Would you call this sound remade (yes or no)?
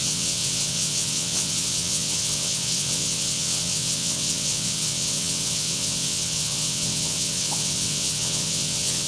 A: yes